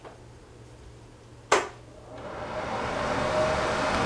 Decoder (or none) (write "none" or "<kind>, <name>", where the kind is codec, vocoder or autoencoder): none